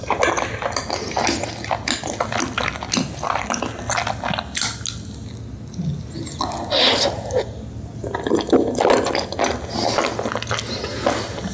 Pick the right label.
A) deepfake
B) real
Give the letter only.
B